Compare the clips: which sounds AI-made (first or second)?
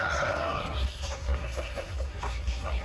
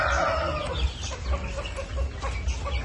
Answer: first